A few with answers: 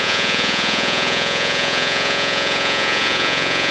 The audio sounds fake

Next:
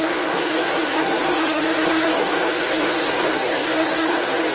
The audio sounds fake